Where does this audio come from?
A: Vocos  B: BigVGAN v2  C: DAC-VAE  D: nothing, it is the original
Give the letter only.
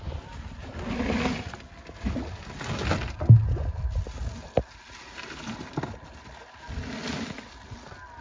D